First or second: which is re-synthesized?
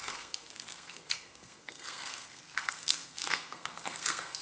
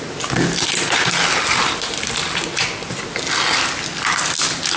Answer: first